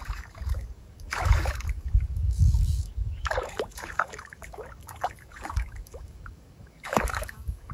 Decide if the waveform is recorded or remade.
remade